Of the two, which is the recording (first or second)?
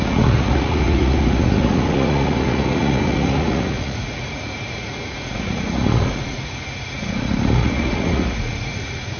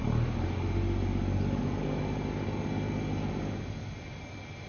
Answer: second